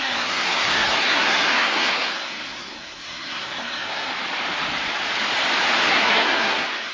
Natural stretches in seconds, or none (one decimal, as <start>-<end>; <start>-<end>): 4.1-5.9